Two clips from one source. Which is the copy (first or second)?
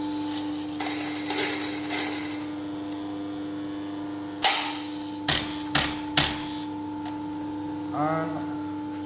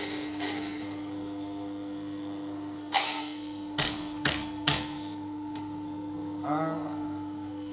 second